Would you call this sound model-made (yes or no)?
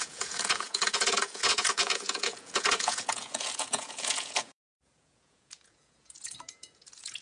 yes